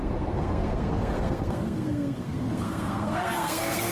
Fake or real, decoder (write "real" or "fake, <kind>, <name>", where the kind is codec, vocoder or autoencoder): fake, codec, SNAC